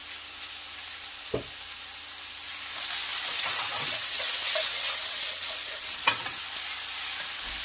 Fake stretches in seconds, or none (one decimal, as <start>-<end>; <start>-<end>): 3.1-6.4